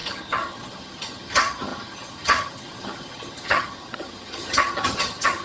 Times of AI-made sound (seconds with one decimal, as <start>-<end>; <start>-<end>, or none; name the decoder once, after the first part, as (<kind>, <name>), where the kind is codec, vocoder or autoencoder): 0.0-5.4 (vocoder, HiFi-GAN)